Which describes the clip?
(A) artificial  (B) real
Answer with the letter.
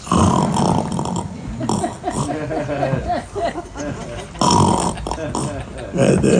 B